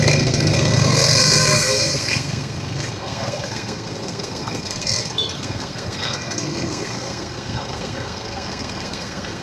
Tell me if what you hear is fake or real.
fake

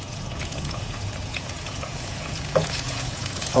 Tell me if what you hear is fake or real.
fake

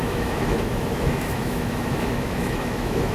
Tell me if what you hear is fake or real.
fake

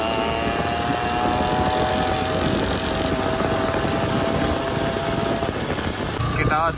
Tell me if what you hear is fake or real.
real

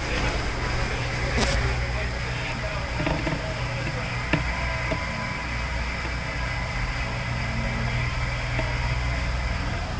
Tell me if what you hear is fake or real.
real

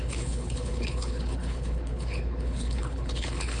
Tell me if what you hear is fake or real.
fake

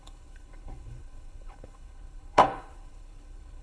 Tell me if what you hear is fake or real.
fake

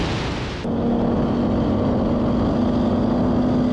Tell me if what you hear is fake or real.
real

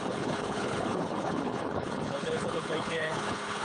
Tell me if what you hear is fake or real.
fake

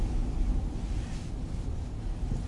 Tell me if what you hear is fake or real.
real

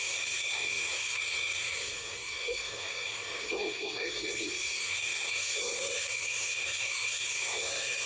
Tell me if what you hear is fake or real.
fake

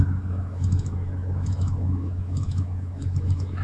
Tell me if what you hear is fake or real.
fake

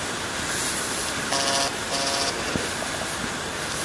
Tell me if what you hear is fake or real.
real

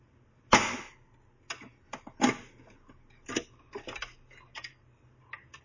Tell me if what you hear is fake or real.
real